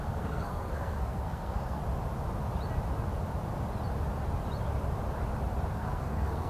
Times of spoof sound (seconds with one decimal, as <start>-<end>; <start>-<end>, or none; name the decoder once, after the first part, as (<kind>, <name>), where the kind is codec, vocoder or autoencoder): 0.0-1.8 (codec, SNAC); 5.7-6.5